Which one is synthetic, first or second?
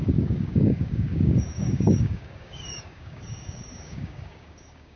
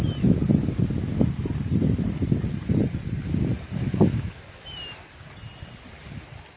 first